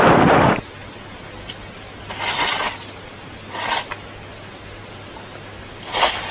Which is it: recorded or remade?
recorded